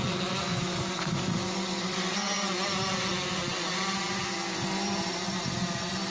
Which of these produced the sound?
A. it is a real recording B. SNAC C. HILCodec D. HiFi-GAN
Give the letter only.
A